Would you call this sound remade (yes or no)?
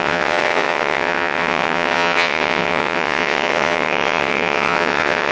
yes